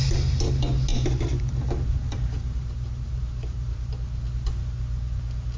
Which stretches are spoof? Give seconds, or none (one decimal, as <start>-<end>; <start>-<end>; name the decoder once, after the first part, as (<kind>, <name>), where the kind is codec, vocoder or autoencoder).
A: 0.9-3.9 (vocoder, BigVGAN v2)